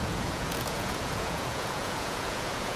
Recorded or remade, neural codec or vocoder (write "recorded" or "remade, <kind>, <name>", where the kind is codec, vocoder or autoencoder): remade, vocoder, Vocos